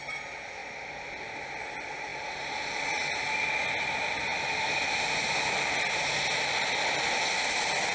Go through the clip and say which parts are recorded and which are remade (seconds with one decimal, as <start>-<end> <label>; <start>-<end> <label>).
0.0-7.9 recorded